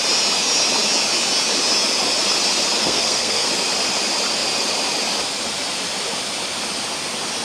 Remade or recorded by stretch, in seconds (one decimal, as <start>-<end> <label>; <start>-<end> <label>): 0.0-2.8 recorded; 2.8-3.5 remade; 3.5-7.4 recorded